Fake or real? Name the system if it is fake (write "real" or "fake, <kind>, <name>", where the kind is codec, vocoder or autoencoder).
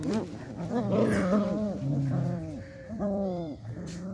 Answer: fake, vocoder, BigVGAN v2